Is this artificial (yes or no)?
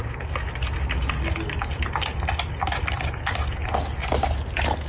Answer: no